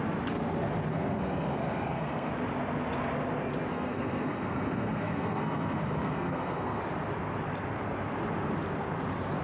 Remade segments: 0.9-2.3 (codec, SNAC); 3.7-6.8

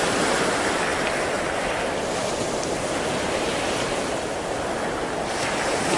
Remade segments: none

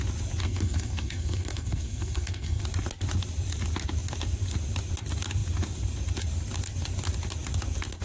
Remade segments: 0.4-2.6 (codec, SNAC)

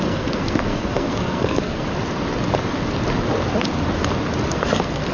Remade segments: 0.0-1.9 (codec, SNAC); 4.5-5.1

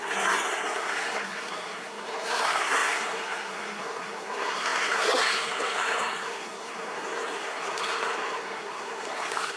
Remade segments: 0.0-9.6 (codec, SNAC)